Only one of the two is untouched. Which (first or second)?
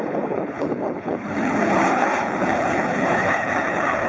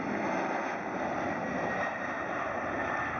second